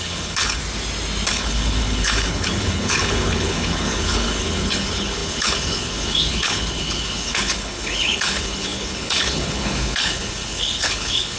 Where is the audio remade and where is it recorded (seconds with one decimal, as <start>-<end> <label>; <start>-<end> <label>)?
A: 0.0-0.6 remade; 0.6-1.3 recorded; 1.3-11.4 remade